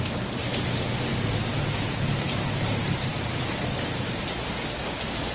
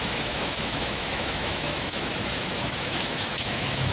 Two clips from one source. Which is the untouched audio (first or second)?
first